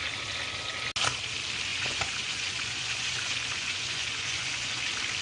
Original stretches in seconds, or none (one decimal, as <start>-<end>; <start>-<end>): 0.0-1.7; 4.8-5.2